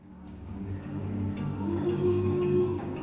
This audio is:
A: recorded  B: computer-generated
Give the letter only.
B